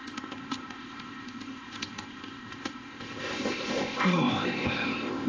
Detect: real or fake fake